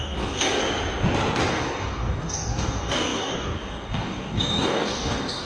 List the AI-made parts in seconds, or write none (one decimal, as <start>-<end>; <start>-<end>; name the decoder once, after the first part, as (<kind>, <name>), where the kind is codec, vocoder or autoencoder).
0.0-0.6 (codec, DAC); 1.5-5.4